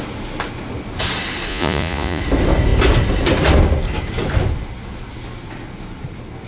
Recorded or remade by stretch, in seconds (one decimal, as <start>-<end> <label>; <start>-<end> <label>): 0.0-1.5 recorded; 1.5-2.2 remade; 2.2-6.5 recorded